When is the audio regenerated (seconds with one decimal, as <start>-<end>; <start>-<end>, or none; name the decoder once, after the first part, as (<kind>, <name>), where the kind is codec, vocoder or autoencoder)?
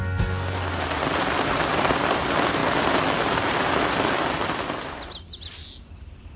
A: none